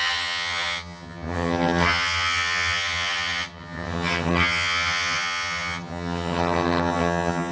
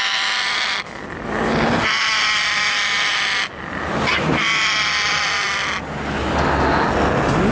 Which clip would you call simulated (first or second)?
first